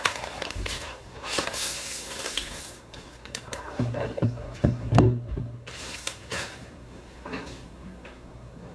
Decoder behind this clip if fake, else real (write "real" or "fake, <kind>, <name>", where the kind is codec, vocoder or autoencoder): fake, codec, SNAC